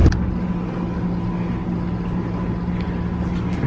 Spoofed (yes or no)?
no